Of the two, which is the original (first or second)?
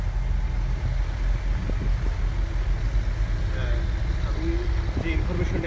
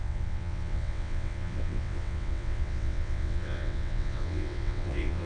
first